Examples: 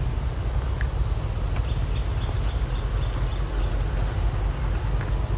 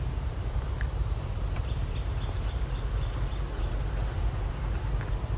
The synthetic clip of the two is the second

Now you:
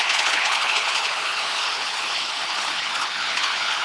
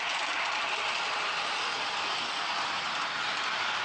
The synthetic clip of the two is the first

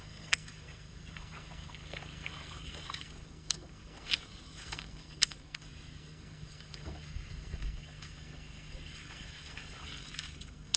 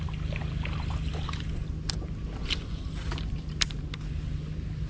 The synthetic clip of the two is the first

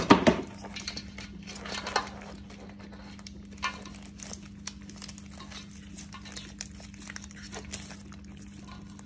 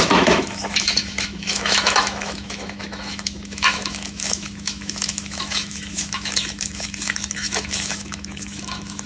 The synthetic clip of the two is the second